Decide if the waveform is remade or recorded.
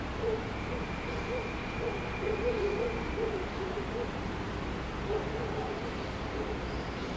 recorded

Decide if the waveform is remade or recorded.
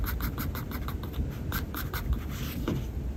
recorded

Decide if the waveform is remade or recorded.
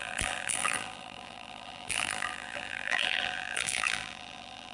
remade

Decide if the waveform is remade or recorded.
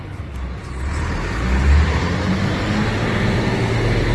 recorded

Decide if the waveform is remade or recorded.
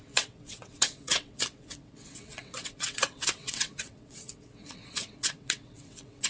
remade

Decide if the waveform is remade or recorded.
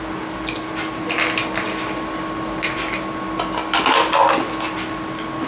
recorded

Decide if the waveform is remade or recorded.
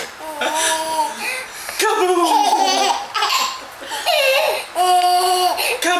recorded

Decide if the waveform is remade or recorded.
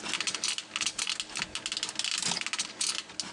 recorded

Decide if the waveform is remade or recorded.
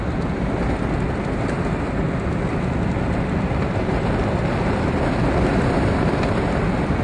recorded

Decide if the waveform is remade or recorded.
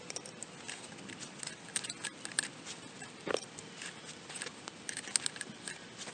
recorded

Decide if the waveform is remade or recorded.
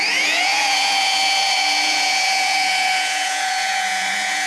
remade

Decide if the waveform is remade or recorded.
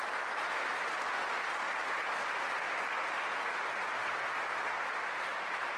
recorded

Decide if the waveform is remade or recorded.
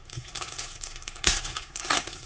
remade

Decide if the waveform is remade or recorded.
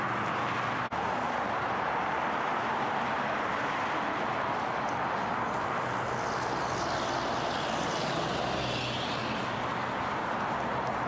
recorded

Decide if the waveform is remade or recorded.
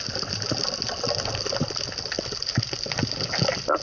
recorded